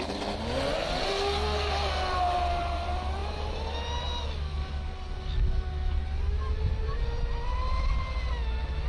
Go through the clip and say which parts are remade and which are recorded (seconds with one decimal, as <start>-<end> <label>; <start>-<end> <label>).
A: 0.0-1.0 recorded; 1.0-1.7 remade; 1.7-8.9 recorded